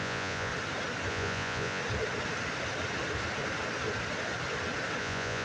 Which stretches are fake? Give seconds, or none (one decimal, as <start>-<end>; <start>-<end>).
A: 0.0-0.5; 1.1-1.8; 5.0-5.4